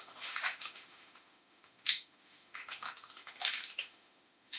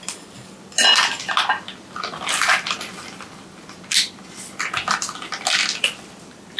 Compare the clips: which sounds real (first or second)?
second